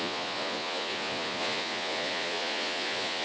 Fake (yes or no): yes